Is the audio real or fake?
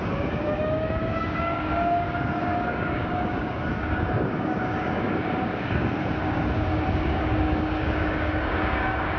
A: fake